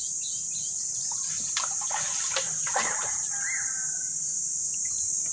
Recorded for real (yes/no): no